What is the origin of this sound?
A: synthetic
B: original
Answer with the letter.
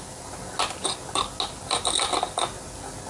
B